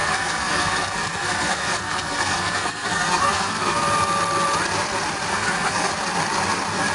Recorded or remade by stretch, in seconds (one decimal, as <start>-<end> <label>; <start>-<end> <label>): 0.0-3.8 remade; 3.8-5.3 recorded; 5.3-5.9 remade; 5.9-6.9 recorded